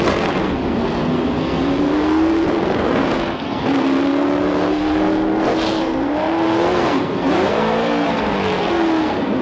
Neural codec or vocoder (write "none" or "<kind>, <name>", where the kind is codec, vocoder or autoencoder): codec, SNAC